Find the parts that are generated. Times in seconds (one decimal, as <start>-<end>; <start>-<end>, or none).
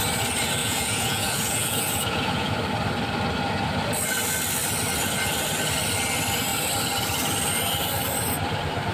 0.6-2.5